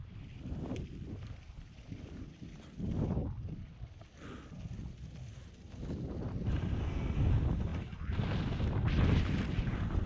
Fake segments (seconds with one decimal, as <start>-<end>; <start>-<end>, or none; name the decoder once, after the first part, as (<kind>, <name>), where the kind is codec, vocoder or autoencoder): 6.8-7.3 (codec, SNAC)